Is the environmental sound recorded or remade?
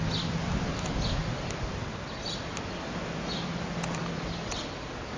recorded